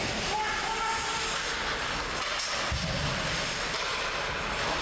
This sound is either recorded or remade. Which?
recorded